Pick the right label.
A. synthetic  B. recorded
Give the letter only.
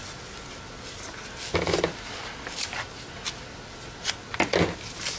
B